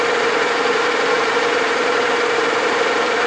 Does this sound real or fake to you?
fake